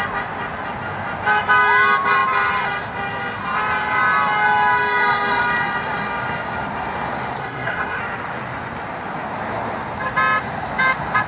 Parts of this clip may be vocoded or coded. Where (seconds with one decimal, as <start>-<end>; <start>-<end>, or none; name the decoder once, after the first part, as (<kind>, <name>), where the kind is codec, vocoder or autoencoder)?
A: 7.4-8.0 (codec, SNAC)